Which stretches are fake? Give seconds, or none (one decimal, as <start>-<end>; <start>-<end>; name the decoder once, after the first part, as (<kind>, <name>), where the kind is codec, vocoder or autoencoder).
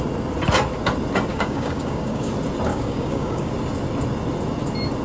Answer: 1.3-2.3 (codec, DAC); 2.7-3.5